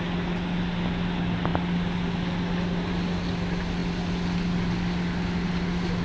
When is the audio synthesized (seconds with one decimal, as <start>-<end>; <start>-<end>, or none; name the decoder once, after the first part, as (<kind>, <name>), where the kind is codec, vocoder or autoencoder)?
none